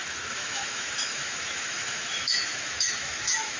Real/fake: fake